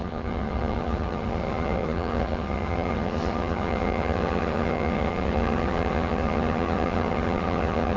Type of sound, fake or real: fake